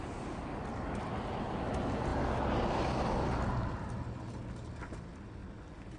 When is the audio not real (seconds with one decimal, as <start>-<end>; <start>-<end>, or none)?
0.7-1.7; 5.4-6.0